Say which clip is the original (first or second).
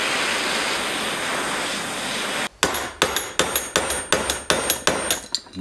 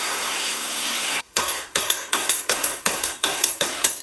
first